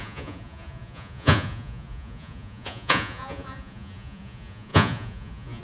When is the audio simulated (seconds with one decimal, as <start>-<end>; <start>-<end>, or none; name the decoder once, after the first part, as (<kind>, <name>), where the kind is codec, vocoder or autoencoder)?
0.0-5.6 (vocoder, Vocos)